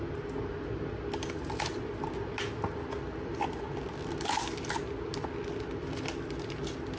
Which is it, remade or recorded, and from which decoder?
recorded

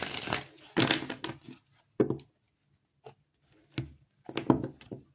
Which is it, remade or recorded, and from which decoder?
recorded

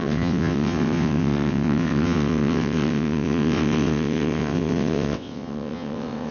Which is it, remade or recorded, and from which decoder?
remade, vocoder, WaveNeXt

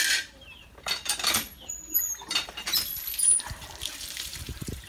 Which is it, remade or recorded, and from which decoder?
remade, vocoder, BigVGAN v2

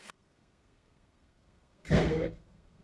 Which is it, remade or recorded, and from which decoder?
remade, codec, SNAC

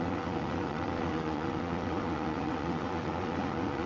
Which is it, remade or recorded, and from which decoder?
remade, vocoder, WaveNeXt